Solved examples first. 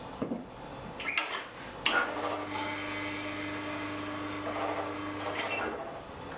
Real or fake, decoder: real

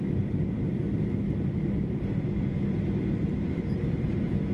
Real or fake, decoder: fake, vocoder, BigVGAN v2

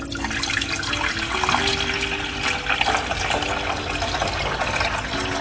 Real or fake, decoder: real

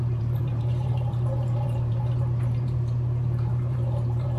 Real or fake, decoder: fake, vocoder, BigVGAN v2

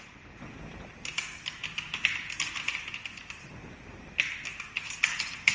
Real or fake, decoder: real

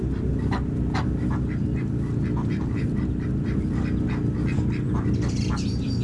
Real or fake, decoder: fake, vocoder, BigVGAN v2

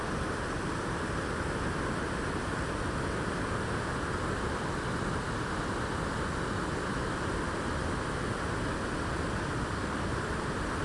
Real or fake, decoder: real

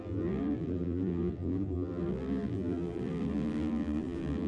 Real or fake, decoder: fake, vocoder, BigVGAN v2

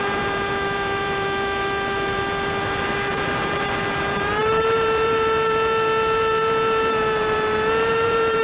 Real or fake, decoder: fake, vocoder, BigVGAN v2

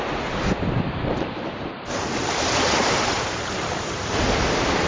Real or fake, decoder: fake, vocoder, BigVGAN v2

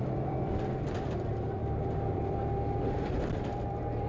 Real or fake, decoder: fake, vocoder, BigVGAN v2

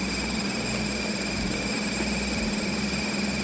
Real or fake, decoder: real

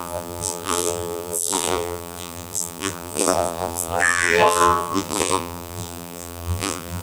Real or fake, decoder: fake, vocoder, BigVGAN v2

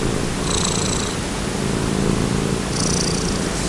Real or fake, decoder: real